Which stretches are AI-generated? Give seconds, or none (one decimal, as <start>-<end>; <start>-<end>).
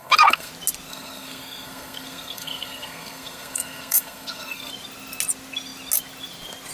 0.0-0.5; 0.9-4.7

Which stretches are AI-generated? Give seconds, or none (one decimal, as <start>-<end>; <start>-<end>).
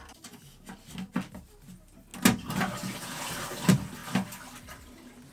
none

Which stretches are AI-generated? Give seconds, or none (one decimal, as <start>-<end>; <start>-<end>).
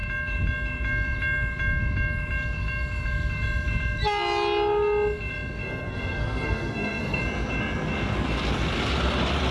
5.6-7.2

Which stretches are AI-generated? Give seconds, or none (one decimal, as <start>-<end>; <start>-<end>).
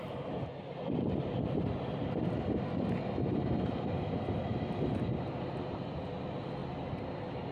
none